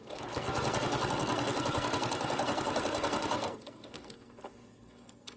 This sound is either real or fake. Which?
fake